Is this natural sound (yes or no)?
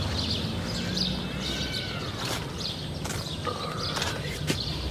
yes